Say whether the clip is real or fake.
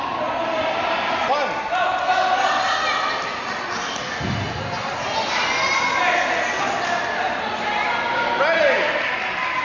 real